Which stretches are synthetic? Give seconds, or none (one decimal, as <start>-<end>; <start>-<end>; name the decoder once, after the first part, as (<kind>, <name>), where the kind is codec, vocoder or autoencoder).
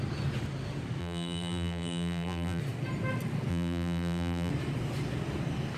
1.0-2.6 (vocoder, BigVGAN v2); 3.5-4.5